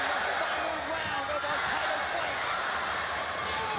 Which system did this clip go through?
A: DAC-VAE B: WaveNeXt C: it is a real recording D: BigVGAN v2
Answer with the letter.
C